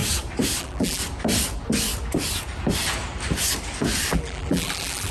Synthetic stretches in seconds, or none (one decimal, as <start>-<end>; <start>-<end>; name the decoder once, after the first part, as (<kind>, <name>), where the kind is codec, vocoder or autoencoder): 0.6-1.0 (vocoder, BigVGAN v2); 4.1-5.1